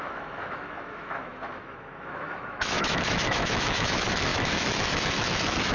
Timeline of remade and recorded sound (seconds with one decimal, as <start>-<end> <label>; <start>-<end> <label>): 0.0-5.7 remade